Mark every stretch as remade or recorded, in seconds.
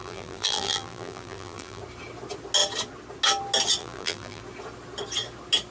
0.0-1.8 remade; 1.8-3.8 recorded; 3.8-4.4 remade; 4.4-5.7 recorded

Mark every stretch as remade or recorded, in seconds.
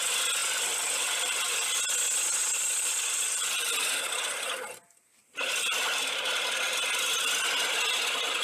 0.0-0.4 recorded; 0.4-1.7 remade; 1.7-2.4 recorded; 2.4-3.7 remade; 3.7-5.2 recorded; 5.2-6.8 remade; 6.8-8.4 recorded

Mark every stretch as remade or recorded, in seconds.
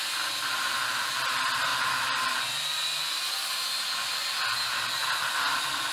0.0-5.9 recorded